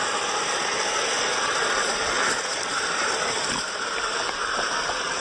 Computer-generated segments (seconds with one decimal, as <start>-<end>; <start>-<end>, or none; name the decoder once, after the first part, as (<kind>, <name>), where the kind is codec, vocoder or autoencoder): 1.6-4.7 (vocoder, BigVGAN v2)

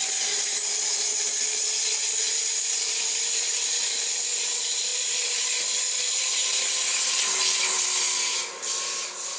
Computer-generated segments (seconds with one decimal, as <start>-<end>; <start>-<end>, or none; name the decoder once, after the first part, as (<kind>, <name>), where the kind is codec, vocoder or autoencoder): 4.9-5.4 (vocoder, BigVGAN v2); 8.1-9.4

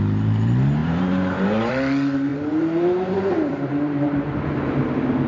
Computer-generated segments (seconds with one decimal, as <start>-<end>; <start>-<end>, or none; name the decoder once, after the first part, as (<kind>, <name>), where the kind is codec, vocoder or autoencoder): 0.8-1.7 (vocoder, BigVGAN v2); 2.3-4.8

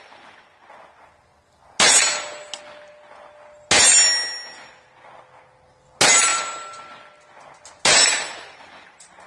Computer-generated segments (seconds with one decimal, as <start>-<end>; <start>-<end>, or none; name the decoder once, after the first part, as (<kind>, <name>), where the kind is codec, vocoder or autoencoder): none

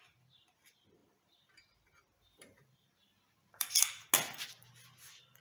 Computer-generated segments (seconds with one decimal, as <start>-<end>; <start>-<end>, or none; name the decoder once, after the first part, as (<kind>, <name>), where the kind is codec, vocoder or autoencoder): 1.0-4.1 (vocoder, BigVGAN v2)

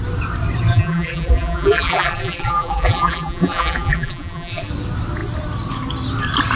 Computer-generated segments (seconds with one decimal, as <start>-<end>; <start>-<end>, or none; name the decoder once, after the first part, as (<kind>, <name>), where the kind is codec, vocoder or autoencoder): 0.7-4.7 (vocoder, BigVGAN v2)

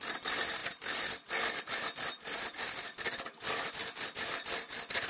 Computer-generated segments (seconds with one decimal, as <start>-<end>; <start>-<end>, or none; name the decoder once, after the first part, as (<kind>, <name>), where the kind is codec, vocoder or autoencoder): none

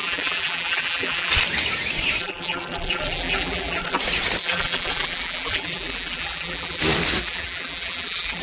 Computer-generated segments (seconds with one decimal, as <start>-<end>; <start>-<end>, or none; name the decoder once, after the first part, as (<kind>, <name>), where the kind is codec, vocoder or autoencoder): 0.0-1.3 (vocoder, BigVGAN v2); 2.2-4.0; 4.4-6.8; 7.2-8.4